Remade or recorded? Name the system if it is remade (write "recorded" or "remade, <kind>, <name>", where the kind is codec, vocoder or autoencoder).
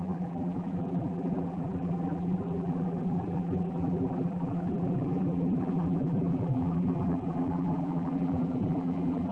remade, vocoder, BigVGAN v2